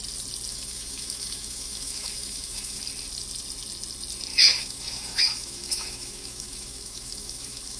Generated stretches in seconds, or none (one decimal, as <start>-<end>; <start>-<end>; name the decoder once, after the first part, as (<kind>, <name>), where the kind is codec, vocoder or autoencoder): 0.5-2.8 (autoencoder, DAC-VAE); 4.3-7.8

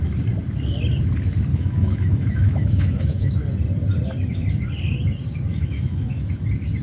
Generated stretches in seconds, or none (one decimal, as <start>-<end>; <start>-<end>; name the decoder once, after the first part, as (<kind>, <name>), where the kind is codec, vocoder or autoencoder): 1.5-3.3 (autoencoder, DAC-VAE); 5.5-6.3

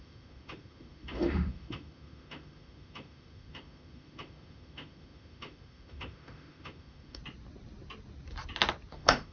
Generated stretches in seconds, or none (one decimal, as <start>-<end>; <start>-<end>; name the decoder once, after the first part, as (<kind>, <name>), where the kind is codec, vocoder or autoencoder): 0.0-7.2 (autoencoder, DAC-VAE); 8.9-9.3